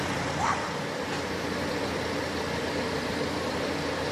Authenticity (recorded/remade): remade